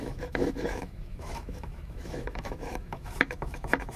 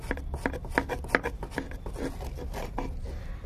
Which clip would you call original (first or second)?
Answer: second